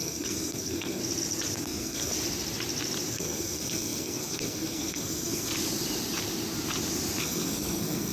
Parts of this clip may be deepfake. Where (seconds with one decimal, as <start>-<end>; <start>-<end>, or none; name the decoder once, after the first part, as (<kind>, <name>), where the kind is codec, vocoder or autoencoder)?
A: 0.0-1.0 (codec, SNAC); 1.6-2.1; 3.1-5.5; 7.2-8.1